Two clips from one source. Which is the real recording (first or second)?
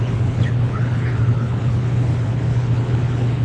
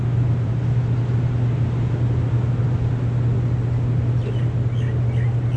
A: second